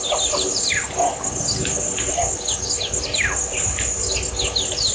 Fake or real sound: real